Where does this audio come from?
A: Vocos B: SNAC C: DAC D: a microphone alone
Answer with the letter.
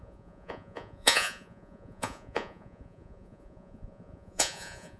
A